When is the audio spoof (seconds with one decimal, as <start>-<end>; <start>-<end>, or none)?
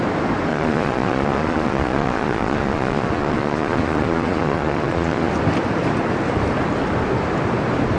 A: 0.5-5.3